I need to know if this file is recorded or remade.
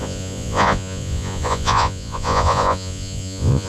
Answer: remade